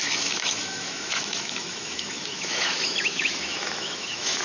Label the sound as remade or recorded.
remade